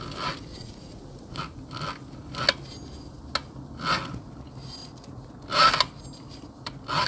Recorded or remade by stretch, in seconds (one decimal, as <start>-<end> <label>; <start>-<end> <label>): 0.0-0.5 recorded; 0.5-1.4 remade; 1.4-4.8 recorded; 4.8-5.4 remade; 5.4-7.1 recorded